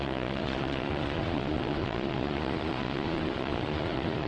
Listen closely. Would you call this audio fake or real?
fake